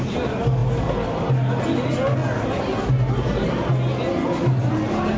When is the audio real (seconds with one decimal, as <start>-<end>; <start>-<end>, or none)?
0.0-5.2